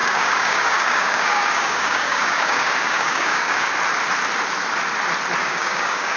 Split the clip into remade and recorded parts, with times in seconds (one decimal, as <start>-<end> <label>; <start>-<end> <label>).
0.0-3.7 remade; 3.7-5.4 recorded; 5.4-6.2 remade